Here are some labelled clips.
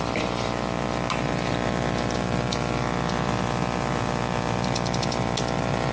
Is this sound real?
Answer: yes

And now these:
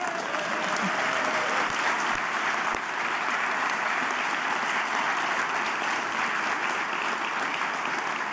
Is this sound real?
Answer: yes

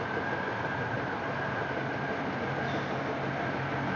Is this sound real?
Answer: yes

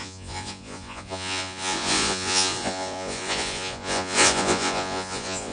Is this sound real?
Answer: no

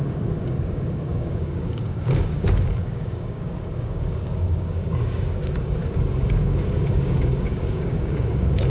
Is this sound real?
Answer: no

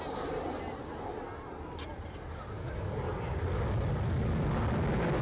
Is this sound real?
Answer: yes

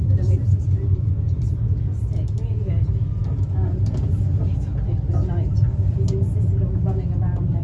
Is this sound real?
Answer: yes